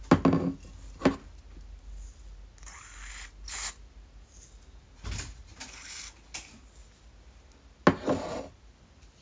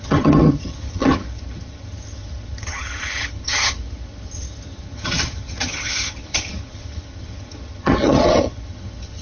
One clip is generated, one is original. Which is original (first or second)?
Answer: first